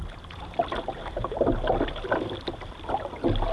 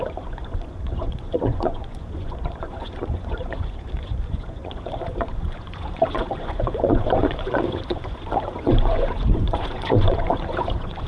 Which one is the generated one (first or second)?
second